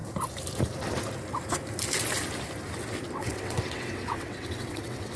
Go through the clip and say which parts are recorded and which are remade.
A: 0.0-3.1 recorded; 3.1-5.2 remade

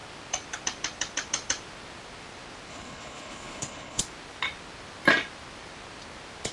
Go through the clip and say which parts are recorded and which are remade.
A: 0.0-2.7 recorded; 2.7-4.0 remade; 4.0-6.5 recorded

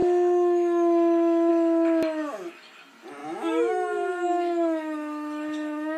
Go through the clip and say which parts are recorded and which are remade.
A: 0.0-1.5 remade; 1.5-3.2 recorded; 3.2-6.0 remade